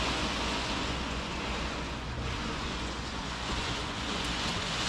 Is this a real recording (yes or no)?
no